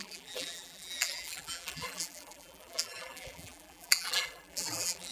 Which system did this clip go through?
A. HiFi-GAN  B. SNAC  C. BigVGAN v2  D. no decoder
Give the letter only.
C